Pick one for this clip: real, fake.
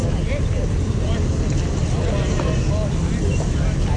real